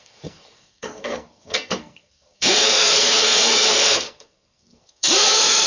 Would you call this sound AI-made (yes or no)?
yes